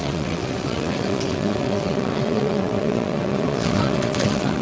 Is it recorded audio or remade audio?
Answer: remade